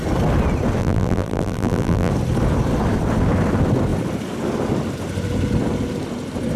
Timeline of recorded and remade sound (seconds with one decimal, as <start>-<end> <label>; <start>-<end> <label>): 0.0-0.8 recorded; 0.8-2.1 remade; 2.1-6.6 recorded